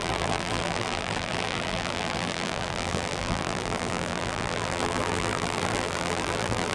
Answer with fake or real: fake